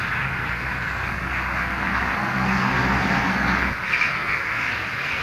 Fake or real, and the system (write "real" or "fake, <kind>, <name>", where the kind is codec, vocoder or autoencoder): fake, codec, SNAC